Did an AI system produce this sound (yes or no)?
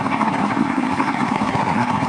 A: yes